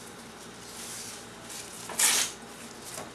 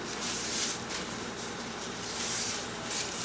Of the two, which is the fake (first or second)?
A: second